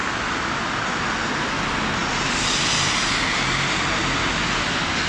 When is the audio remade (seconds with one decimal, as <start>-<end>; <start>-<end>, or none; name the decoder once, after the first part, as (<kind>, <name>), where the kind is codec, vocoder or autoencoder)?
none